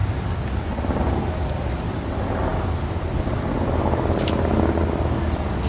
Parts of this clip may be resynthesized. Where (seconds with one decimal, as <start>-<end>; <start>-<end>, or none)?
none